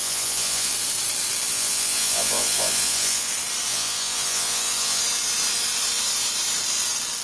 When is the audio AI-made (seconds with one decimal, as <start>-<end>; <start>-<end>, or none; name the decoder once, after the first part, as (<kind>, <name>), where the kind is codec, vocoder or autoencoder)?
0.0-0.7 (vocoder, Vocos); 1.5-3.3; 3.7-5.0